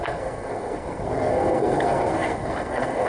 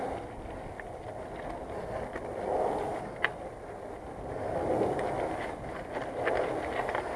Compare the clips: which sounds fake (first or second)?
first